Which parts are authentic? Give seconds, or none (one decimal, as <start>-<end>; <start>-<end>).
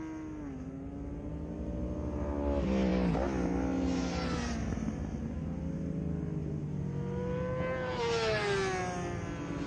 0.0-9.7